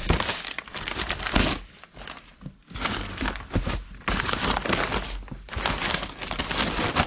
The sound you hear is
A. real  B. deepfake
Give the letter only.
A